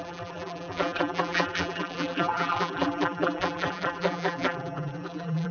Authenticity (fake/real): fake